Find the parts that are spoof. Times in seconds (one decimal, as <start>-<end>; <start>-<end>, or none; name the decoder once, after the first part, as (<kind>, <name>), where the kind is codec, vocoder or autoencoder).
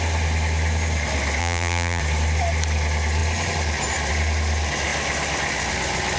1.4-2.0 (vocoder, BigVGAN v2)